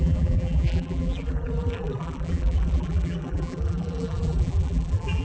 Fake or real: fake